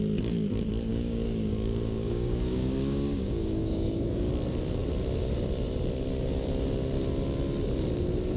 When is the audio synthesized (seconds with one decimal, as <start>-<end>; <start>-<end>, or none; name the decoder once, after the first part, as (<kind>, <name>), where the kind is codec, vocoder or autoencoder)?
0.9-4.3 (codec, DAC)